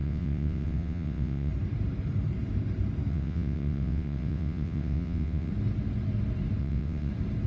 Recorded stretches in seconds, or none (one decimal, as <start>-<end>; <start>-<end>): 1.5-3.1; 5.5-6.6; 7.1-7.5